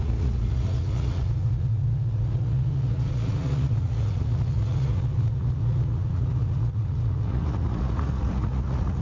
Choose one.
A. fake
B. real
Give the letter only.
A